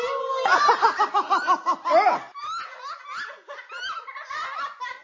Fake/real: real